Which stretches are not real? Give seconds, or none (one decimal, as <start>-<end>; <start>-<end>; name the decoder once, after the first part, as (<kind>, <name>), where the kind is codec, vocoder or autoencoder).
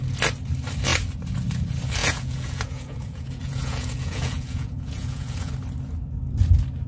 2.0-5.5 (vocoder, Vocos)